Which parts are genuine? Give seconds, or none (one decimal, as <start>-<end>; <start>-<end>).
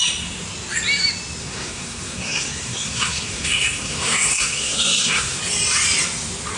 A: 0.0-1.4; 5.4-6.6